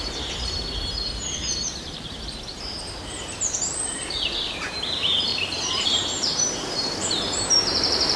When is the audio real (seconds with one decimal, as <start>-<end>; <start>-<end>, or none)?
none